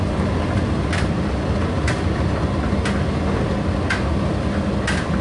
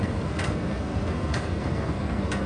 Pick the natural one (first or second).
first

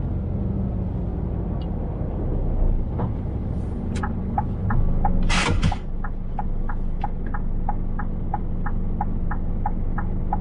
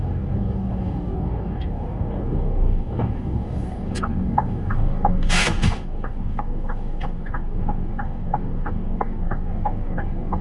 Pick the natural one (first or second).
first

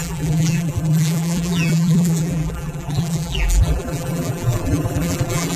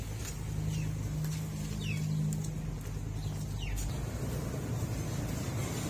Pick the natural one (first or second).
second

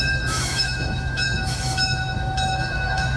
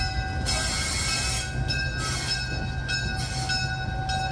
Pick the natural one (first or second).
second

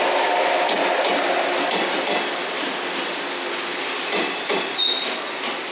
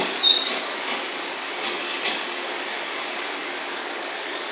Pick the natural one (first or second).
first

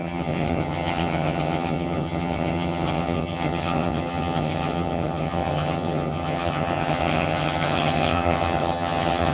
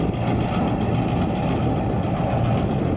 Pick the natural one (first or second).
second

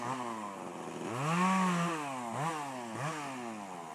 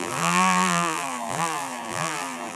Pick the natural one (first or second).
first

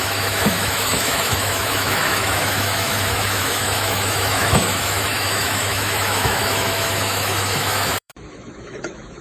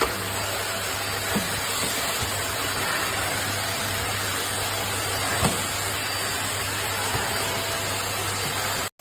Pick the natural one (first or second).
second